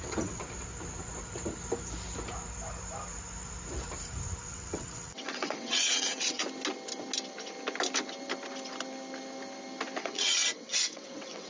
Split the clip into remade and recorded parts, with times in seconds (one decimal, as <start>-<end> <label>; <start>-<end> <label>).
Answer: 0.0-0.4 remade; 0.4-4.4 recorded; 4.4-6.4 remade; 6.4-10.0 recorded; 10.0-11.5 remade

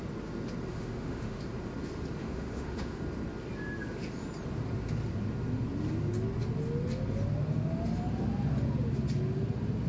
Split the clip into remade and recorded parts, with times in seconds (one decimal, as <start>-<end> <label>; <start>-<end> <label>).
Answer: 0.0-0.7 recorded; 0.7-1.4 remade; 1.4-2.2 recorded; 2.2-3.0 remade; 3.0-9.9 recorded

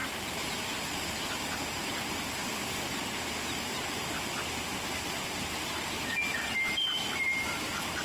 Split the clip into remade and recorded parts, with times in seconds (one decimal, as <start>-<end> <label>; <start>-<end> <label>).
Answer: 0.0-1.3 remade; 1.3-6.1 recorded; 6.1-8.0 remade